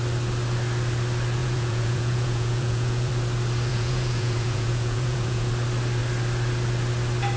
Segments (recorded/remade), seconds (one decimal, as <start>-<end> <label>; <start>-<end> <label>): 0.0-1.4 recorded; 1.4-3.1 remade; 3.1-3.7 recorded; 3.7-5.5 remade; 5.5-7.4 recorded